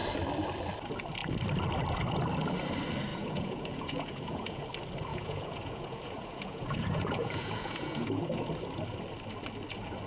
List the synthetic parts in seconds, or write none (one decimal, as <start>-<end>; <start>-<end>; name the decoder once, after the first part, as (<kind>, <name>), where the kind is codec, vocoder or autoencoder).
3.1-4.6 (vocoder, Vocos); 5.1-8.5